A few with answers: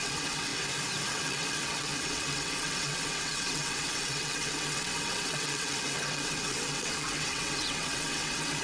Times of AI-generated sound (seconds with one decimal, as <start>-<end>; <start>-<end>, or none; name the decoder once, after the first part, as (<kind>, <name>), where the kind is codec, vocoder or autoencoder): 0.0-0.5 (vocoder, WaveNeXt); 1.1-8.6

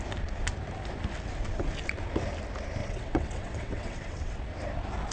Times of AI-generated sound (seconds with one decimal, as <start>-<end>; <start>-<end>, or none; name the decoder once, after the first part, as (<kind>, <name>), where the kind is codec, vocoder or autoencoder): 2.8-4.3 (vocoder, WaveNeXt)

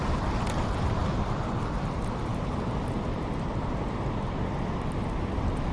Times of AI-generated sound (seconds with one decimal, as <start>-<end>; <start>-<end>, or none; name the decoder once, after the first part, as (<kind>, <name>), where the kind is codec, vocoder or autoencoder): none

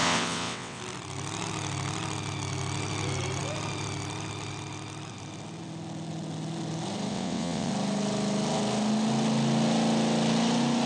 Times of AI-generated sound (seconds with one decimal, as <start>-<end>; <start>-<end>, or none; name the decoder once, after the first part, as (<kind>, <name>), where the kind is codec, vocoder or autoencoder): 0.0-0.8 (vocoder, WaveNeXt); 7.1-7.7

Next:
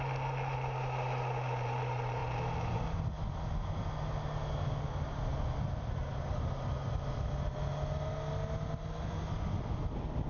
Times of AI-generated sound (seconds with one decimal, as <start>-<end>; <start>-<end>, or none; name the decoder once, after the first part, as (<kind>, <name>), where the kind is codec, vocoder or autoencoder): none